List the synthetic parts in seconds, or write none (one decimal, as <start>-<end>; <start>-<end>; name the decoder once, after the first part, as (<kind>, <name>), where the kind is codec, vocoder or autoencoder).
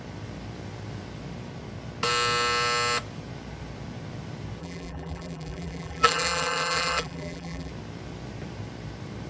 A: 4.6-7.7 (vocoder, BigVGAN v2)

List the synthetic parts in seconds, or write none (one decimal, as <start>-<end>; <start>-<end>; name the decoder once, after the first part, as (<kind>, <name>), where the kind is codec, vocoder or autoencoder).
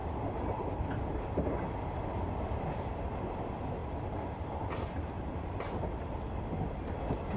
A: 0.0-0.7 (vocoder, BigVGAN v2); 3.8-6.0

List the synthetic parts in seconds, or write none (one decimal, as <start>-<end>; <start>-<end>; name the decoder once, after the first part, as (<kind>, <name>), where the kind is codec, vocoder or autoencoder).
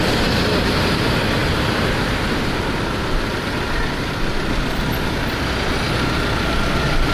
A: 1.4-2.0 (vocoder, BigVGAN v2)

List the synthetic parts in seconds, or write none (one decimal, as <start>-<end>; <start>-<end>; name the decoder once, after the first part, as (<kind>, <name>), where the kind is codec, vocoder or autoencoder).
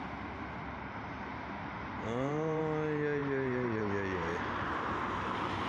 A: 1.3-2.6 (vocoder, BigVGAN v2); 3.2-3.8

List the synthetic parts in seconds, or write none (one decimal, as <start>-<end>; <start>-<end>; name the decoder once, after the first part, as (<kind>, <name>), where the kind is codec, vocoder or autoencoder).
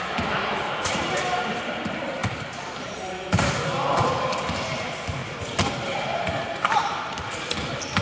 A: 2.2-4.5 (vocoder, BigVGAN v2); 5.2-8.0